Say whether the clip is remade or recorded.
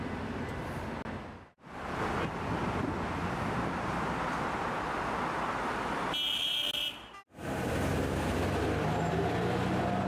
recorded